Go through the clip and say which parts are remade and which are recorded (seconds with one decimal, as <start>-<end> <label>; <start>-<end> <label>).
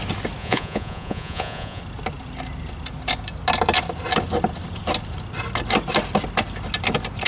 0.0-0.4 recorded; 0.4-1.8 remade; 1.8-7.3 recorded